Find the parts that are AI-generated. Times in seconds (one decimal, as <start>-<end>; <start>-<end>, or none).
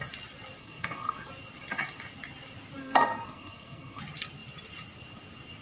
0.6-1.3; 2.8-4.0